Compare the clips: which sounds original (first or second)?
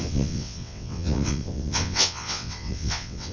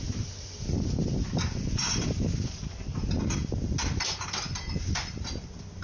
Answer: second